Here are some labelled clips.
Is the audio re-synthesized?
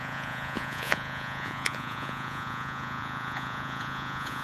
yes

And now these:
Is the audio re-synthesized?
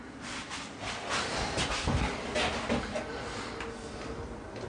no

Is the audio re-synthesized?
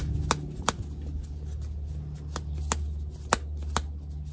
no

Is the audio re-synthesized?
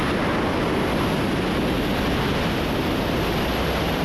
no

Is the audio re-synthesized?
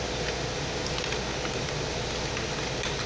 no